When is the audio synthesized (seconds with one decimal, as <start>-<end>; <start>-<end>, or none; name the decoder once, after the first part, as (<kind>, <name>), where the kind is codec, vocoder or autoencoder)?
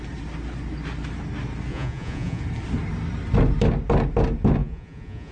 1.7-2.4 (vocoder, Vocos); 4.6-5.3